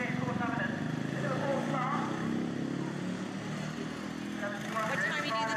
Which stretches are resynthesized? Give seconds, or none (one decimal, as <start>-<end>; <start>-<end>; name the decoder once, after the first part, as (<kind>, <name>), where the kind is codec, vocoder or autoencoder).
none

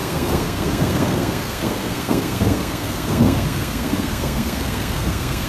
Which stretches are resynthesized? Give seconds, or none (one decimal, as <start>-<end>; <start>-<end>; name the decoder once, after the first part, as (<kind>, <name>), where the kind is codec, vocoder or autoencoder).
0.0-5.5 (codec, SNAC)

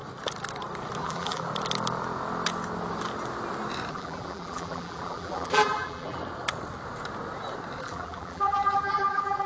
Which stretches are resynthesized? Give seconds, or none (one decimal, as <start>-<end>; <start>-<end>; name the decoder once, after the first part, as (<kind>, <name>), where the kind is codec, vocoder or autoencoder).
1.0-1.5 (vocoder, BigVGAN v2); 3.9-6.2; 7.8-9.5

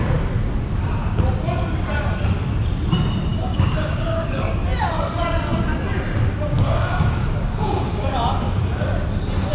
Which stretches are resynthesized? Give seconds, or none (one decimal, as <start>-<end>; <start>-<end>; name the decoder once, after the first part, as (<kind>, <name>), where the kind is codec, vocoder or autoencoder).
3.3-4.5 (codec, DAC); 6.5-8.1